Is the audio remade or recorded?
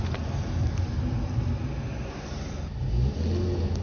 recorded